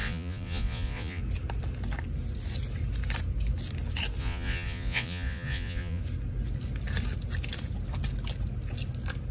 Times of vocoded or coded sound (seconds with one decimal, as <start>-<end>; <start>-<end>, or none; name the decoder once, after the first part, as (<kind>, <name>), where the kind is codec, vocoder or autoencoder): 0.0-1.2 (vocoder, Vocos); 4.2-6.0